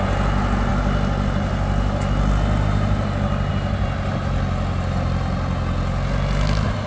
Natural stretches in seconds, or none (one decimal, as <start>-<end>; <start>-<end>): 0.0-6.9